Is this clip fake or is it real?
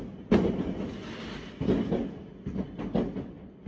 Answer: real